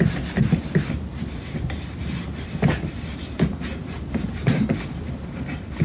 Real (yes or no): yes